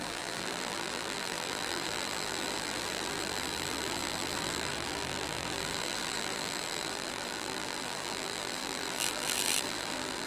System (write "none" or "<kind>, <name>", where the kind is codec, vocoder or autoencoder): vocoder, BigVGAN v2